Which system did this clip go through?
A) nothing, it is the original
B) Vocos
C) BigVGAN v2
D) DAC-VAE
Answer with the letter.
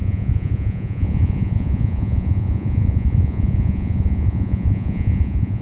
B